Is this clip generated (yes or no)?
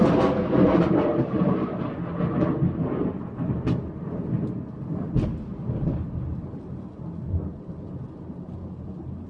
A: no